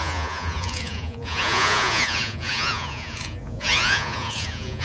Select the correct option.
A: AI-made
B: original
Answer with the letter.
A